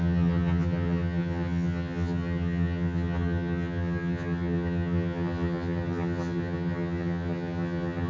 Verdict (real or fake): fake